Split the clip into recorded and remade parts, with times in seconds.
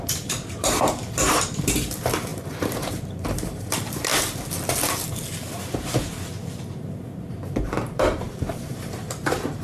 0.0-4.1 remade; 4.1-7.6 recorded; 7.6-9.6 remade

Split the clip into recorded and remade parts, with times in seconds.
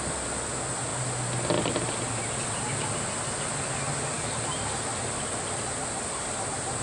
0.0-6.8 recorded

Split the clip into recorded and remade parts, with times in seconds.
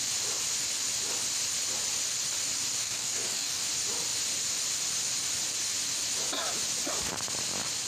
0.0-2.8 recorded; 2.8-3.6 remade; 3.6-7.9 recorded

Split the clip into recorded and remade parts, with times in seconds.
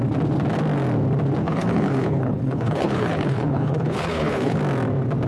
0.0-1.4 recorded; 1.4-4.6 remade; 4.6-5.3 recorded